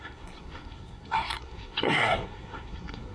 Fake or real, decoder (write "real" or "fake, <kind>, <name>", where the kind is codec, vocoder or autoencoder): fake, codec, SNAC